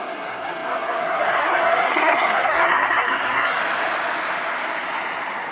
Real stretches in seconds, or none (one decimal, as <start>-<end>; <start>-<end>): 3.6-5.5